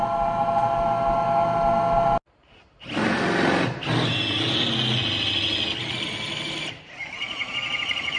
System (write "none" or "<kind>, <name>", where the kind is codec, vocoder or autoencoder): none